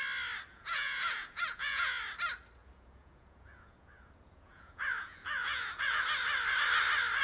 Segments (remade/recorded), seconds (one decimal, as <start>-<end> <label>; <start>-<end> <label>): 0.0-0.5 recorded; 0.5-2.0 remade; 2.0-2.6 recorded; 2.6-6.0 remade; 6.0-7.2 recorded